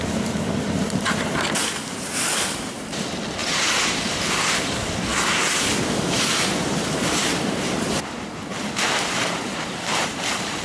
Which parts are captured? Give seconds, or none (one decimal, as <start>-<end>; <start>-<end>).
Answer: 3.4-4.2; 5.1-7.6

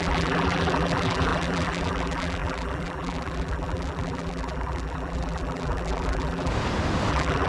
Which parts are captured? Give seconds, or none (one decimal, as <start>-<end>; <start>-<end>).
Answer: 6.5-7.1

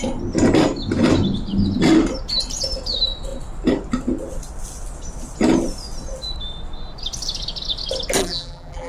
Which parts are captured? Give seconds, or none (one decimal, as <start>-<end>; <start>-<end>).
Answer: 0.0-8.2

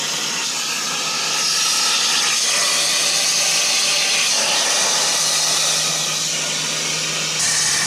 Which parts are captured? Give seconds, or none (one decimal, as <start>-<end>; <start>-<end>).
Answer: 0.0-7.9

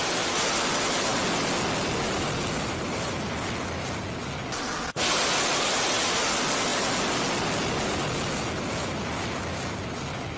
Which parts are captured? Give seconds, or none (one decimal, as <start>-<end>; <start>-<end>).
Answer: 0.0-10.4